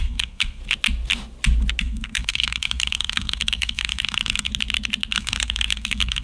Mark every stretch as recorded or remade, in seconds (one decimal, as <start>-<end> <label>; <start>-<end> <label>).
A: 0.0-0.6 remade; 0.6-1.8 recorded; 1.8-4.5 remade; 4.5-5.1 recorded; 5.1-6.2 remade